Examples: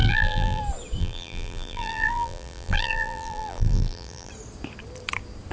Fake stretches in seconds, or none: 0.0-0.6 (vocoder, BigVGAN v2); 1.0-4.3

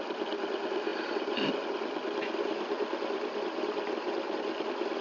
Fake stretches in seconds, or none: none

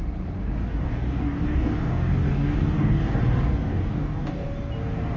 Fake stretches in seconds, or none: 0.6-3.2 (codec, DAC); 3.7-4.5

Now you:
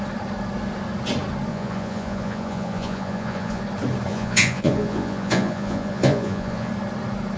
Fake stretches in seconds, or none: 1.5-3.6 (vocoder, Vocos); 4.1-6.7

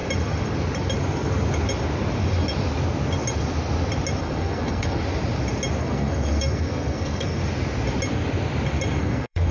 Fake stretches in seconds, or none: 4.2-5.0 (codec, SNAC); 5.8-7.4; 9.0-9.5

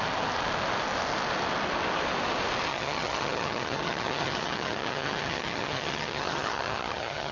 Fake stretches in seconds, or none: 2.7-7.3 (vocoder, HiFi-GAN)